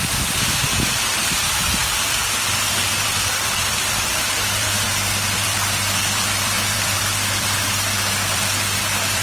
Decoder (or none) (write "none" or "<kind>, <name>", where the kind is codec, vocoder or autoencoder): vocoder, BigVGAN v2